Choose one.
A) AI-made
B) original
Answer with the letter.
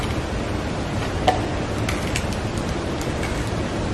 B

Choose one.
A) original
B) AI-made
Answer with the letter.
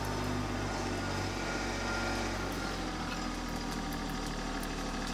A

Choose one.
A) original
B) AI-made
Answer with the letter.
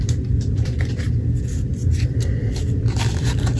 B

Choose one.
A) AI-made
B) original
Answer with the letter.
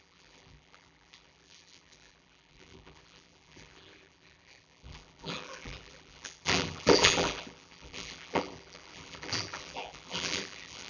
A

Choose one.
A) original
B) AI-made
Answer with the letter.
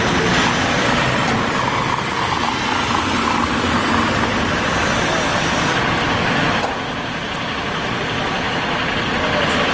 A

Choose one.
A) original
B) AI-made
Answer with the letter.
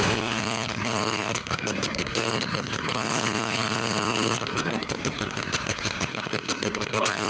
B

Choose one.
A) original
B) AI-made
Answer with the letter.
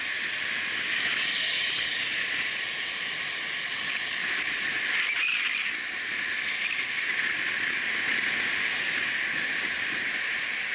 A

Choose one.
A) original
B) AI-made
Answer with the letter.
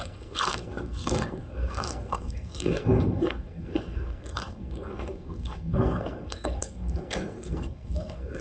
B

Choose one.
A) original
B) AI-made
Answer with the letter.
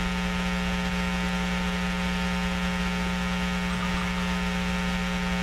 A